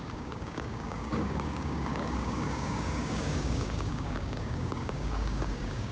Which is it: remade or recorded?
remade